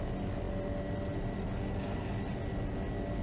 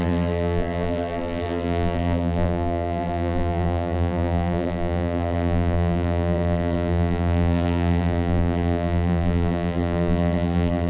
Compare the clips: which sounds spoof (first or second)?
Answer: second